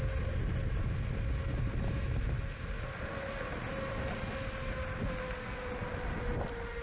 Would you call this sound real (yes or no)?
yes